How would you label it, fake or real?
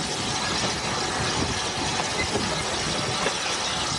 real